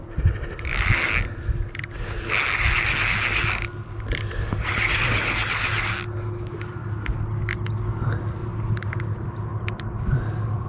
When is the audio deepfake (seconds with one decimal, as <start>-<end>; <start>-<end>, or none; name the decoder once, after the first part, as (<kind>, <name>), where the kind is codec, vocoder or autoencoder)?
8.4-9.0 (vocoder, BigVGAN v2)

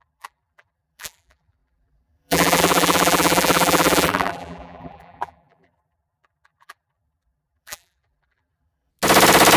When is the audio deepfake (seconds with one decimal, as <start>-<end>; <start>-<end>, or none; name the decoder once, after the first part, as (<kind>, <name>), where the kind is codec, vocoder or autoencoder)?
0.0-8.9 (vocoder, BigVGAN v2)

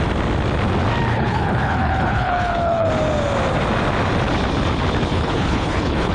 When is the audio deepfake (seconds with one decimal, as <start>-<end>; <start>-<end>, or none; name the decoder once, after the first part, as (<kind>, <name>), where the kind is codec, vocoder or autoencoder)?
1.1-2.9 (codec, HILCodec); 5.1-6.1

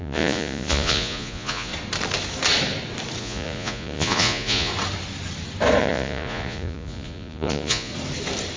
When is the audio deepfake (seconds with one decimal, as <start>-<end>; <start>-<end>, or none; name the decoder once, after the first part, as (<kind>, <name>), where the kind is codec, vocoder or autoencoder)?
0.0-1.7 (vocoder, Vocos); 3.2-4.7; 5.8-7.9

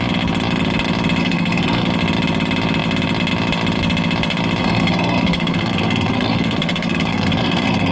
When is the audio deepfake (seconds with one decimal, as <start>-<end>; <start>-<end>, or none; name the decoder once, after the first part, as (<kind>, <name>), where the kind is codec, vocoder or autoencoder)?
1.2-1.9 (codec, SNAC); 4.6-7.9

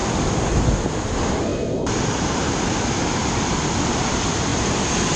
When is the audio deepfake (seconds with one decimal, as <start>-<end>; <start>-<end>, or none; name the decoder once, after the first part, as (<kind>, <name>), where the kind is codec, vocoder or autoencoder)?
none

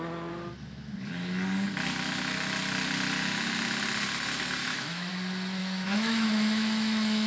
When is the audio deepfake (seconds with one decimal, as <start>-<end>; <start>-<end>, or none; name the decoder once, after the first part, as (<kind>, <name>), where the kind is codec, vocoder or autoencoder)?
4.6-5.1 (autoencoder, DAC-VAE); 5.6-7.3

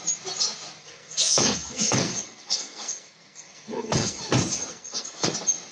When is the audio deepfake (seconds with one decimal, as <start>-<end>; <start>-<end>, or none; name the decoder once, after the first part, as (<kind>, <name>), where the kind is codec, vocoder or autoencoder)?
0.8-4.2 (codec, SNAC); 4.7-5.3